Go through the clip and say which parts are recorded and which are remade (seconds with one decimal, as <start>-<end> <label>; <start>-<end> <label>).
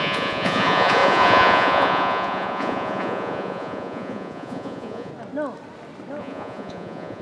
0.0-5.1 remade; 5.1-6.2 recorded; 6.2-7.2 remade